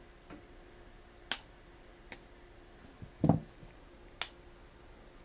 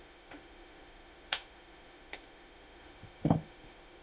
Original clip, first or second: first